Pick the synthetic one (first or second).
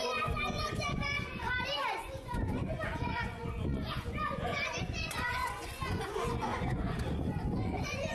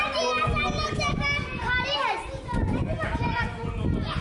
first